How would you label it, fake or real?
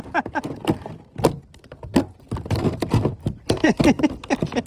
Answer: real